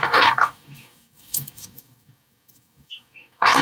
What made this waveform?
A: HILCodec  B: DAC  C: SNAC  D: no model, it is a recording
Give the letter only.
B